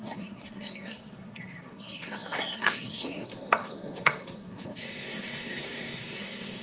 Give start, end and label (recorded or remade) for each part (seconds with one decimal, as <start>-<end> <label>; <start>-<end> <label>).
0.0-6.6 remade